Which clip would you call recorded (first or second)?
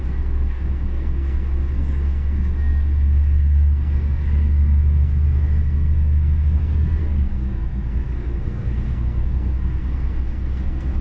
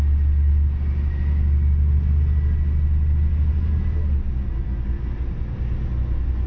second